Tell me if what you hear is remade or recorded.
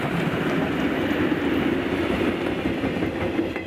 recorded